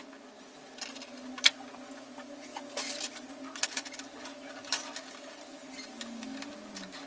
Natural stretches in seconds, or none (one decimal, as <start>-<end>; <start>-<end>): 0.0-7.1